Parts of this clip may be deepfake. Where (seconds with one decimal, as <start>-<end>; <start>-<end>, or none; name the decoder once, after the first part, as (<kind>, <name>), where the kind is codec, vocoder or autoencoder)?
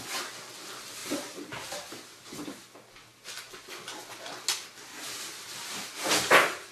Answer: 1.0-2.6 (vocoder, BigVGAN v2); 4.9-5.5